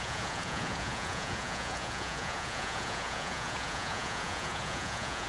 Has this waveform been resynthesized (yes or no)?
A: yes